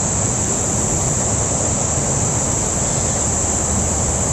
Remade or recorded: recorded